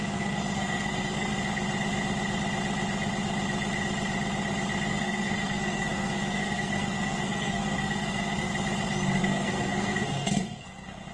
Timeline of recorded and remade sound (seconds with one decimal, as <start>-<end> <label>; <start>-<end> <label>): 0.0-1.3 remade; 1.3-4.9 recorded; 4.9-8.5 remade; 8.5-9.2 recorded; 9.2-11.1 remade